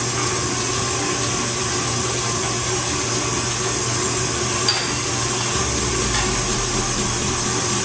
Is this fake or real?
real